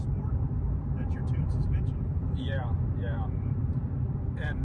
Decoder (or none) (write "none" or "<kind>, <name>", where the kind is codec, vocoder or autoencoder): vocoder, BigVGAN v2